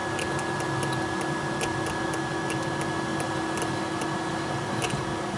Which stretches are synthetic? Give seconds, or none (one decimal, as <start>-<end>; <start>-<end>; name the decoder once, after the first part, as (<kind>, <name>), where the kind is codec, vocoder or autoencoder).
none

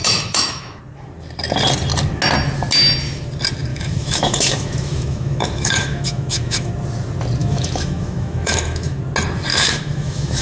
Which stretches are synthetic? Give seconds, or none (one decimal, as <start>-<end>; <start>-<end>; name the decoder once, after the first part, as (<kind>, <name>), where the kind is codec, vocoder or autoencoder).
0.0-0.8 (autoencoder, DAC-VAE); 3.7-6.7; 7.4-9.0; 9.5-10.4